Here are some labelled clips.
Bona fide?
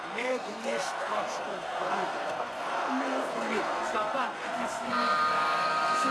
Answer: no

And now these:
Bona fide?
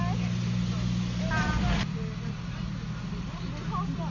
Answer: yes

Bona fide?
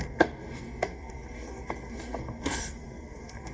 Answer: no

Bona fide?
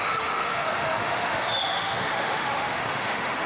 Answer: no